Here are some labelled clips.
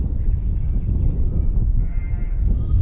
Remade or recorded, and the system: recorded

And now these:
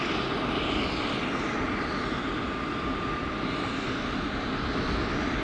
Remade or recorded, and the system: recorded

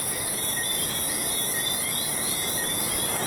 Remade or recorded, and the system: recorded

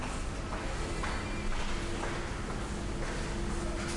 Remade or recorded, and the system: recorded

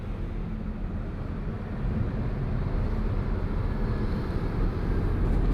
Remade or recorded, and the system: recorded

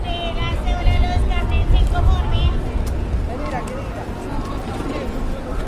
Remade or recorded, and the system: recorded